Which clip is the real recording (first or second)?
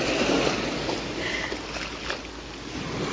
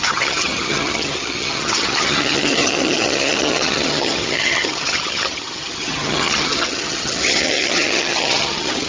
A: first